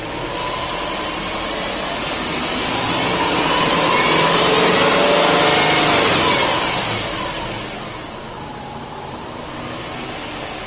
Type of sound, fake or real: real